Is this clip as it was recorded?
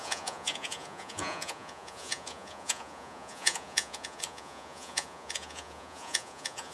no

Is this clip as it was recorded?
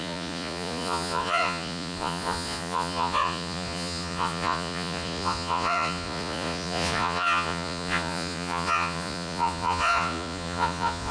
no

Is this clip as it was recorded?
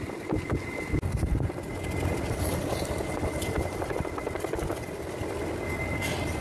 yes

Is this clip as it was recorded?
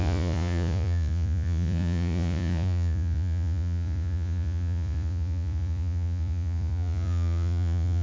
no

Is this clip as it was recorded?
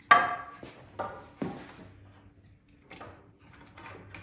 yes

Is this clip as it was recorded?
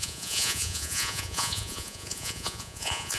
no